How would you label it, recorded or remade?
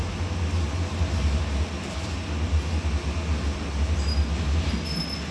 recorded